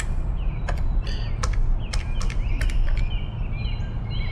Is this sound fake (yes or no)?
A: no